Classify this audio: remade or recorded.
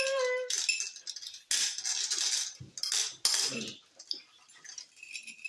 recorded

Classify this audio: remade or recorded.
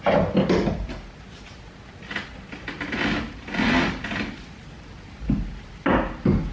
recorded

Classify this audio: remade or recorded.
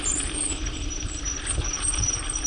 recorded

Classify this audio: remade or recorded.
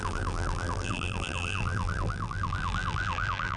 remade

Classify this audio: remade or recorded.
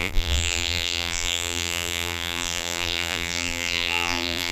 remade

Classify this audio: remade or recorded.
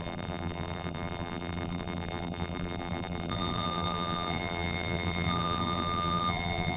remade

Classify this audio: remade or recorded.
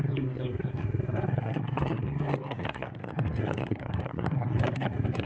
remade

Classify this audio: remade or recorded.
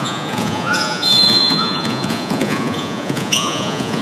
remade